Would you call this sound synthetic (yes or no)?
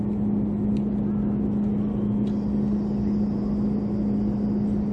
no